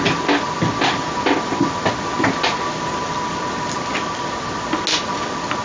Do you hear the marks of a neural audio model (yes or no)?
no